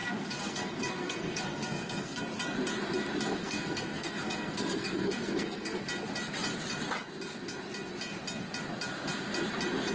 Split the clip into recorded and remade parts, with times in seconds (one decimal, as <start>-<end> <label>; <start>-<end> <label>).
0.0-2.2 remade; 2.2-3.4 recorded; 3.4-5.8 remade; 5.8-9.9 recorded